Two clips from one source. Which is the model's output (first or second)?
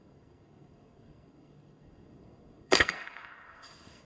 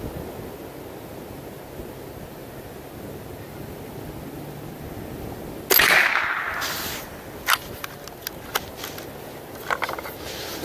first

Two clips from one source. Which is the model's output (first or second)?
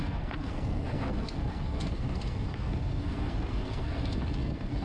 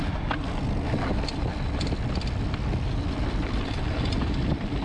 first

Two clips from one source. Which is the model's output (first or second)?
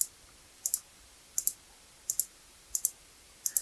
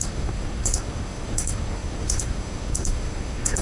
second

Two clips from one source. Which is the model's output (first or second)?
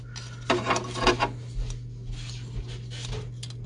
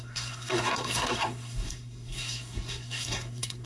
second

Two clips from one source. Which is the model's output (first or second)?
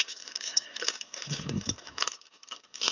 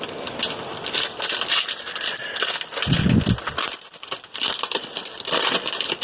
first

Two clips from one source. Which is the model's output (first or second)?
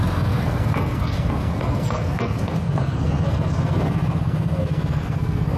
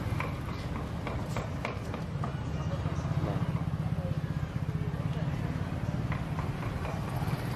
first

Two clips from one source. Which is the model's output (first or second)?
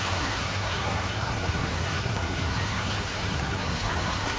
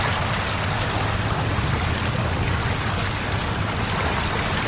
first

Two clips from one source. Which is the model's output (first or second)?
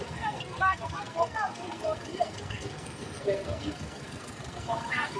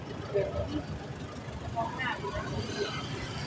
first